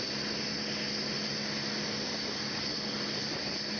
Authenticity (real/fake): real